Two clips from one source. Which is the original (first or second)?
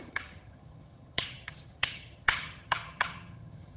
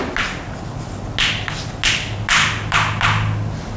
second